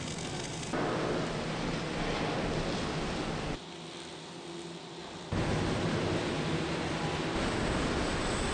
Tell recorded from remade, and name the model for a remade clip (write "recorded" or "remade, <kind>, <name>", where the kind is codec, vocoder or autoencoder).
recorded